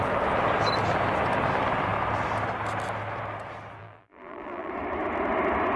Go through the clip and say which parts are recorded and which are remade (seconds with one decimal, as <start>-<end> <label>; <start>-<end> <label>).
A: 0.0-3.8 recorded; 3.8-4.7 remade; 4.7-5.8 recorded